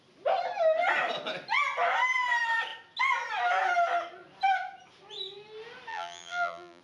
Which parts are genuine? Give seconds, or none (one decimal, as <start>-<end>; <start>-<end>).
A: 0.0-5.9